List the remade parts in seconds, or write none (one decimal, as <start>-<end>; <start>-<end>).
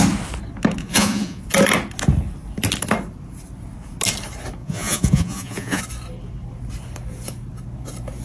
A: 0.8-1.4; 4.6-5.8